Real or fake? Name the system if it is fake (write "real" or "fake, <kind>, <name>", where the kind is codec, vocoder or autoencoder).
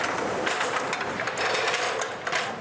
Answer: real